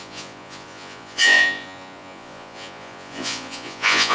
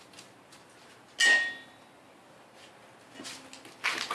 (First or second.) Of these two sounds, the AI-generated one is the first